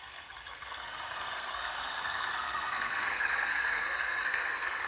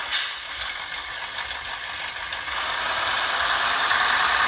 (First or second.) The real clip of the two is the second